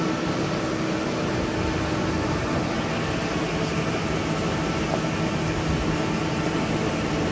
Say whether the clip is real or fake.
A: real